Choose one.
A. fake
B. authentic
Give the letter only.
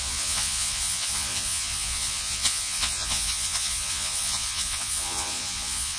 A